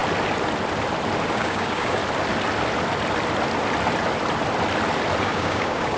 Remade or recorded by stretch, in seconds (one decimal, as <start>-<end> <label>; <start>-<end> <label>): 0.0-1.3 recorded; 1.3-2.0 remade; 2.0-5.2 recorded; 5.2-6.0 remade